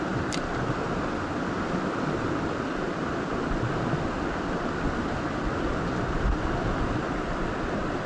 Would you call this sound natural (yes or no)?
yes